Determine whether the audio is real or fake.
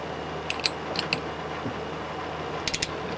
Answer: real